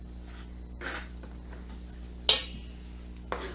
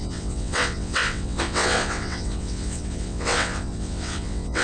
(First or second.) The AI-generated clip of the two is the second